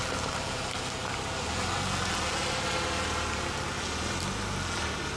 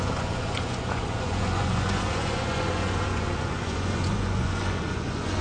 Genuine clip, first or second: first